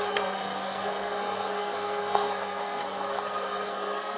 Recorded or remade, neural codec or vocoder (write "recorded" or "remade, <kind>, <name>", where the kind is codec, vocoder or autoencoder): remade, codec, SNAC